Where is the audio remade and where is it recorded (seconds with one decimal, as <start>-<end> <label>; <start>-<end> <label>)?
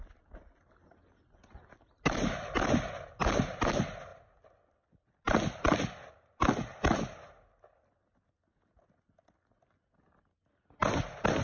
0.0-11.4 recorded